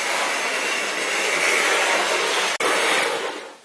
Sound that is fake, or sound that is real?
real